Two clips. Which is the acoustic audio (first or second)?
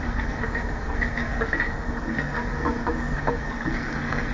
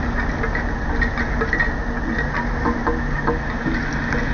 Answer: second